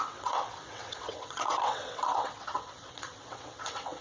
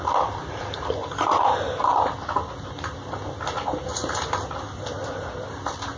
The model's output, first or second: first